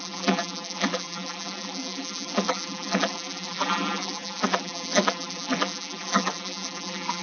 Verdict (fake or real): fake